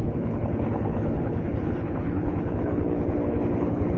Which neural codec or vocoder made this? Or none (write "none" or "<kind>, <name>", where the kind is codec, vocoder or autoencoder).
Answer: codec, HILCodec